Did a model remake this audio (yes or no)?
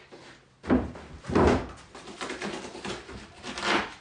no